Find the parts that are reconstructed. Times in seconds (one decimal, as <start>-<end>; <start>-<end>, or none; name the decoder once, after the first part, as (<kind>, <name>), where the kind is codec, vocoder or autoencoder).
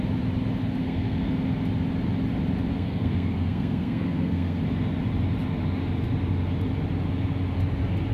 0.8-1.3 (codec, SNAC); 2.7-4.6